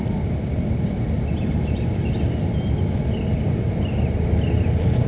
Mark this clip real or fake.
real